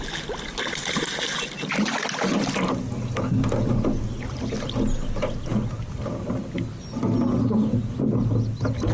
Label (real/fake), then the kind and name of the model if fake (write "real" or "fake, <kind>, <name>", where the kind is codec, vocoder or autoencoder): real